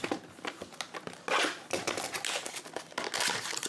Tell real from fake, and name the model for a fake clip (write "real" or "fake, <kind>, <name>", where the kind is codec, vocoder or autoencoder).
real